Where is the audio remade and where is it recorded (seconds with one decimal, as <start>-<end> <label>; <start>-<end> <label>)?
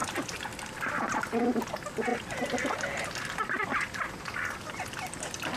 0.0-5.6 recorded